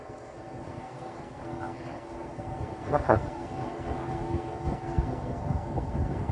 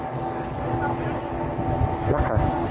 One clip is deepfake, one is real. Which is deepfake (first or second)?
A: first